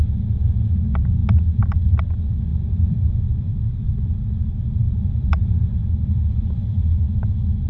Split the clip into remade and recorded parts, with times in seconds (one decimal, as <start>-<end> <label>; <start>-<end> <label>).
0.0-2.5 recorded; 2.5-3.8 remade; 3.8-4.8 recorded; 4.8-7.0 remade; 7.0-7.7 recorded